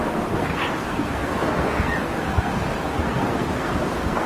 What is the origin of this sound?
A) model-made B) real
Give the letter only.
A